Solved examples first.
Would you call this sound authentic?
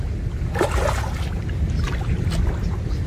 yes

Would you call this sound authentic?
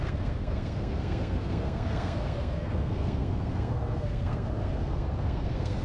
no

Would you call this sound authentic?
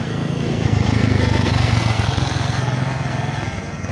no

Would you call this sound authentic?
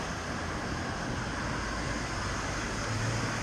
yes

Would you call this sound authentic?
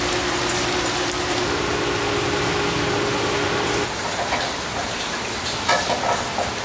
yes